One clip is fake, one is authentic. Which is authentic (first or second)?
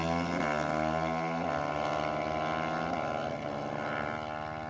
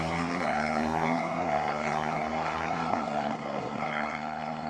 first